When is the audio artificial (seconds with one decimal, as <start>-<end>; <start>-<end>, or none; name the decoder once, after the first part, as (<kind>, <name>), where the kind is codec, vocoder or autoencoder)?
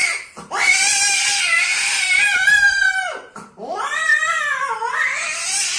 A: 0.0-1.0 (vocoder, BigVGAN v2); 1.7-4.4